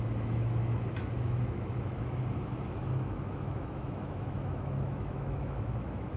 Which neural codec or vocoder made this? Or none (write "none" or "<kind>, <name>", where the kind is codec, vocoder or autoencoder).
autoencoder, DAC-VAE